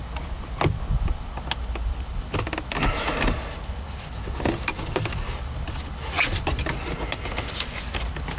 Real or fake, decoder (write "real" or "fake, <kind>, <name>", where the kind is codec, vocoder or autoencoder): real